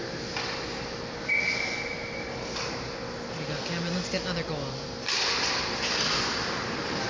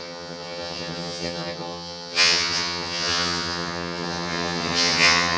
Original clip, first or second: first